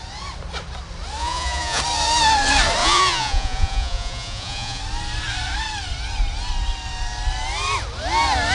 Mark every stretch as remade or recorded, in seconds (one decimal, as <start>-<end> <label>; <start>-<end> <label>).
0.0-1.2 recorded; 1.2-1.8 remade; 1.8-2.8 recorded; 2.8-4.8 remade; 4.8-8.5 recorded